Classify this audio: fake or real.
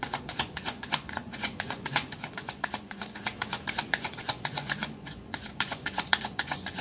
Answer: fake